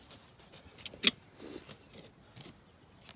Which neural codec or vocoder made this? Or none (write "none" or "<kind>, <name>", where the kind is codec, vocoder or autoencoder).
none